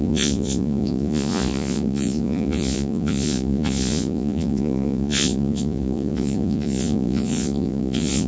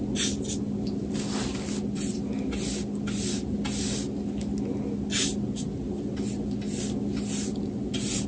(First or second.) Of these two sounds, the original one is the second